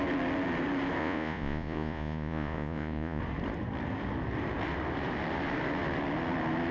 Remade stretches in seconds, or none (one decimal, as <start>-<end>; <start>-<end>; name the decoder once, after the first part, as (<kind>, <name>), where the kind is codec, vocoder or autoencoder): 1.0-3.2 (vocoder, Vocos)